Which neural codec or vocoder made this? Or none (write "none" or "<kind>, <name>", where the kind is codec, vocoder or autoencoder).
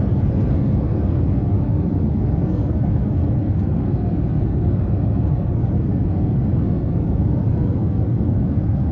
codec, SNAC